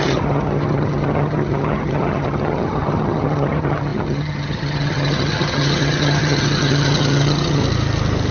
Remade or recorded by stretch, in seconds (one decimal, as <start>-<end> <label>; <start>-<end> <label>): 0.0-7.6 remade; 7.6-8.3 recorded